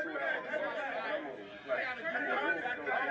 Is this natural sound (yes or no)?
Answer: yes